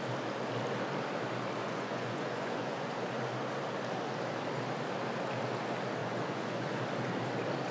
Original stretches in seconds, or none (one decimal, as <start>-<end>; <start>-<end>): 0.0-1.6; 2.9-6.0; 6.8-7.7